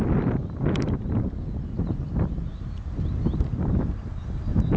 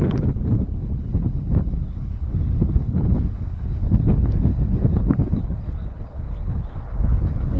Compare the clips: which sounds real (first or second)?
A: first